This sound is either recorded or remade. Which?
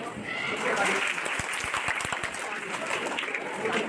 recorded